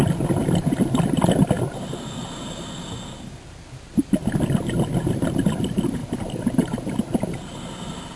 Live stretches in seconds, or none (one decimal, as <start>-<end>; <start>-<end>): 0.0-0.4; 2.2-8.2